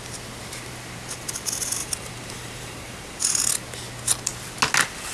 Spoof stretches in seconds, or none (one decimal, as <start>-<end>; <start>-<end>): 1.8-3.5